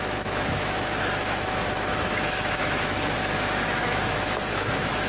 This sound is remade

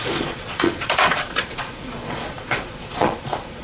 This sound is remade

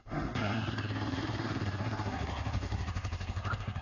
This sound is remade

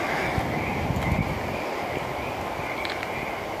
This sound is recorded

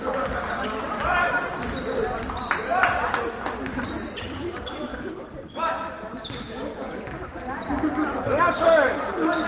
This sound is recorded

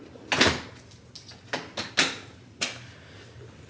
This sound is recorded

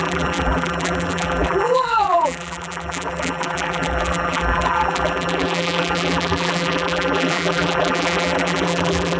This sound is remade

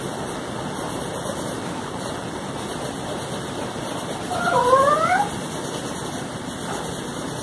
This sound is recorded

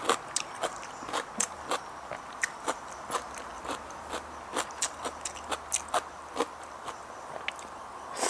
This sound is recorded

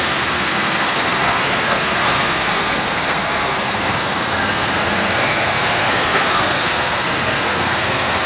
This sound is remade